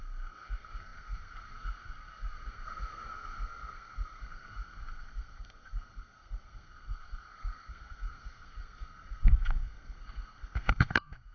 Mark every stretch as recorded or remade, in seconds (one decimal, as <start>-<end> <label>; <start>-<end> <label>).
0.0-11.3 remade